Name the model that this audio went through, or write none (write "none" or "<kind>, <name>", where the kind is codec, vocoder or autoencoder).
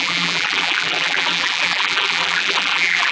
vocoder, BigVGAN v2